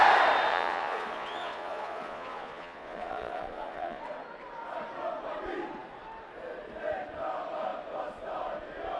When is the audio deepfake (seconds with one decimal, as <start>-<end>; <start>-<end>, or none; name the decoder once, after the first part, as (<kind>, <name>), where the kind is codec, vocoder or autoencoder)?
0.5-4.0 (vocoder, Vocos)